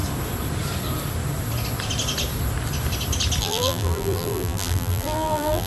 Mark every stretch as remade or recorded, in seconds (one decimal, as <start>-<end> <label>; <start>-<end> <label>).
0.0-3.4 recorded; 3.4-5.7 remade